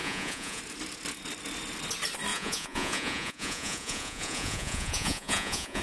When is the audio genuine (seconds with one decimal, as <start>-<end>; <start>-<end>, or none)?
0.6-2.3